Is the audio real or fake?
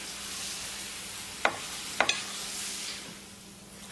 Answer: real